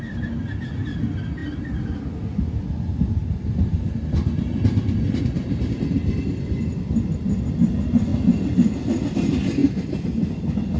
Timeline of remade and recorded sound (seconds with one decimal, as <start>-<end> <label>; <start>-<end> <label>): 0.0-10.8 recorded